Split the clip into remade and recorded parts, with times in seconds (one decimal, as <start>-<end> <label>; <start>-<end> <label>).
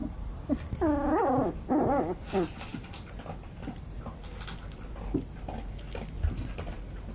0.0-7.1 recorded